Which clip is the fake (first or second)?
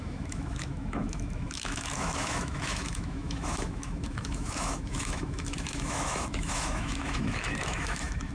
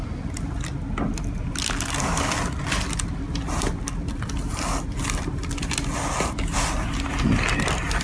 first